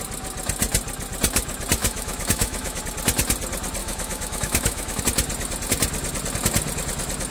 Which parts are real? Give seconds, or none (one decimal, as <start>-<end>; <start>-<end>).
0.0-1.8; 2.8-3.8; 5.0-7.3